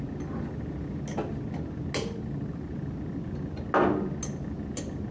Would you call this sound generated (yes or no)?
no